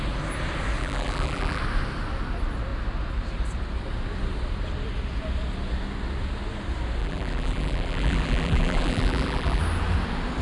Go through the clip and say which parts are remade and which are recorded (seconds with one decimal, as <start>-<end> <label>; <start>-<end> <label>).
0.0-0.8 recorded; 0.8-1.6 remade; 1.6-7.0 recorded; 7.0-9.6 remade; 9.6-10.4 recorded